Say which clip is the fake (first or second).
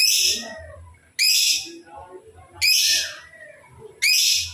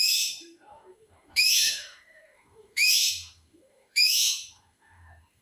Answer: second